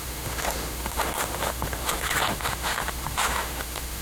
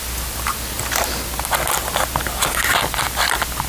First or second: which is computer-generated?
first